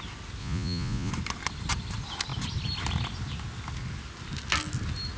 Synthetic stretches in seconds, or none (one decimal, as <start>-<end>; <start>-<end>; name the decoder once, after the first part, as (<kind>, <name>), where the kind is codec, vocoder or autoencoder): 0.4-1.1 (vocoder, Vocos)

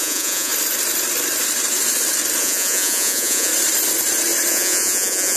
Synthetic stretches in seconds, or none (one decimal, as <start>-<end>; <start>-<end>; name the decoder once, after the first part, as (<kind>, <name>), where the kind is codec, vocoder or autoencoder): 0.0-0.5 (vocoder, Vocos); 2.4-3.5; 4.5-5.4

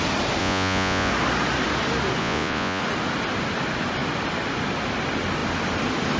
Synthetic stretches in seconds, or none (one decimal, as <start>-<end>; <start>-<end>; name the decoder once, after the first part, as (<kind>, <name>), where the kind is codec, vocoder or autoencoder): 0.4-1.1 (vocoder, Vocos); 2.2-2.8

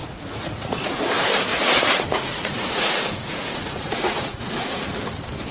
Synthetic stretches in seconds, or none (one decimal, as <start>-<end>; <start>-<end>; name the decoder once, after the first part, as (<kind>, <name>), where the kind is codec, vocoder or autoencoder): 0.0-1.0 (vocoder, Vocos); 1.5-4.8

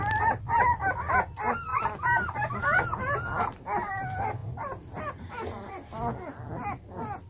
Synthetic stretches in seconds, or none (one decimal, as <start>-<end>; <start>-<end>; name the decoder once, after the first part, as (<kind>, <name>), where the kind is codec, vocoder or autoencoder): none

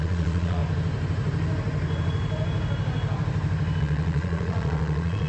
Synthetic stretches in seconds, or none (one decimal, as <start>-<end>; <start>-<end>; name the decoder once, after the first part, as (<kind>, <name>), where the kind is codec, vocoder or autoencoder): 0.0-0.6 (vocoder, Vocos); 3.8-5.3

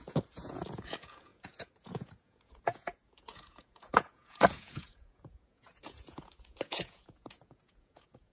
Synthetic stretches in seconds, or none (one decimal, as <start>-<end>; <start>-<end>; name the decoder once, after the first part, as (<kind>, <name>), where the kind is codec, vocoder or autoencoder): 0.0-8.3 (vocoder, Vocos)

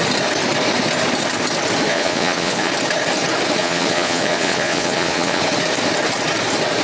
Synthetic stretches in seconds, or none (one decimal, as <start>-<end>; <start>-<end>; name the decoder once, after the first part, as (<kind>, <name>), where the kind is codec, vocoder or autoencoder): 1.9-2.7 (vocoder, Vocos); 3.6-5.4